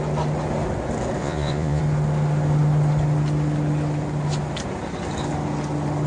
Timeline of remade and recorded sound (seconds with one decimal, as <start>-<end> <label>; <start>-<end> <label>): 0.0-1.2 recorded; 1.2-1.8 remade; 1.8-6.1 recorded

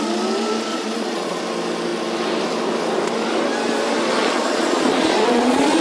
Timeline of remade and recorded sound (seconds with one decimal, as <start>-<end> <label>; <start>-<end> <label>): 0.0-0.7 recorded; 0.7-1.4 remade; 1.4-4.2 recorded; 4.2-5.8 remade

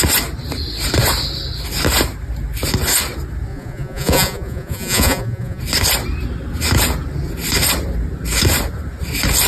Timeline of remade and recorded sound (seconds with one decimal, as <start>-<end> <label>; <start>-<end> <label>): 0.0-3.5 recorded; 3.5-5.6 remade; 5.6-9.5 recorded

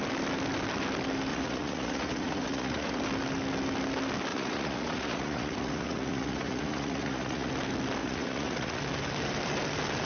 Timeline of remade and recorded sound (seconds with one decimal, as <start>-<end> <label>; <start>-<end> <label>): 0.0-1.3 recorded; 1.3-3.0 remade; 3.0-4.3 recorded; 4.3-7.5 remade; 7.5-8.0 recorded; 8.0-8.8 remade; 8.8-10.0 recorded

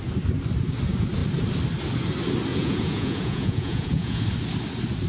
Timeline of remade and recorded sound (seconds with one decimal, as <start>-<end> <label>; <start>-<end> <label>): 0.0-2.5 recorded; 2.5-4.2 remade; 4.2-5.1 recorded